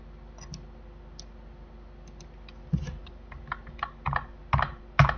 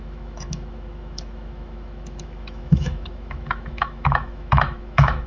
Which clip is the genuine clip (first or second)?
first